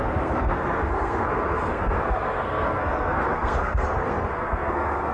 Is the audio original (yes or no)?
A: no